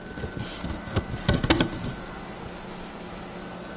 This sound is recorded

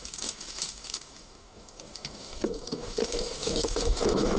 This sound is remade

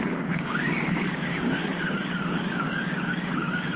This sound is remade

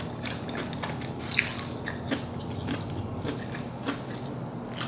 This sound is recorded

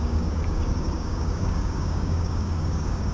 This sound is remade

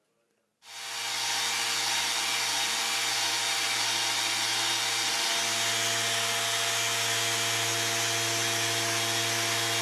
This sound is recorded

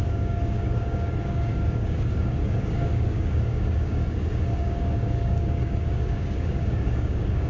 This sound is remade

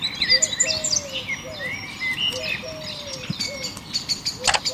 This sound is recorded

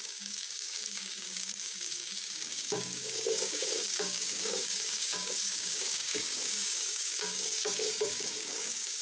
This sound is remade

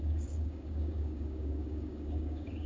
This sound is remade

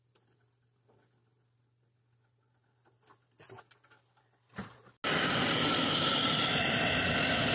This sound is recorded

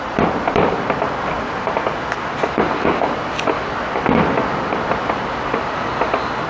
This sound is recorded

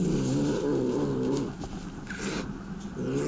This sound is recorded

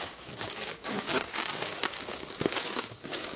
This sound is remade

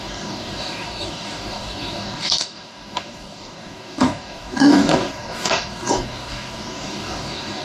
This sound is remade